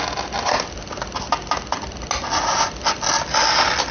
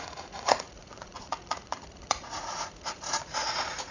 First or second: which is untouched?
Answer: first